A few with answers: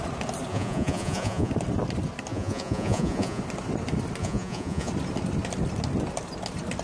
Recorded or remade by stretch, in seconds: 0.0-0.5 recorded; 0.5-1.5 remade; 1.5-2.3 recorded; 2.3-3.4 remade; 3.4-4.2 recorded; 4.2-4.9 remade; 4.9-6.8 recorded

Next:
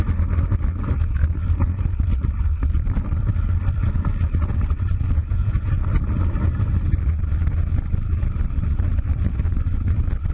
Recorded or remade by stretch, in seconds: 0.0-5.2 recorded; 5.2-5.8 remade; 5.8-10.3 recorded